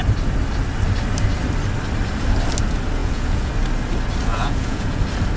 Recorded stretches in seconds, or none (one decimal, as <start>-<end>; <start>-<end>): 0.0-3.0; 3.5-4.3; 5.0-5.4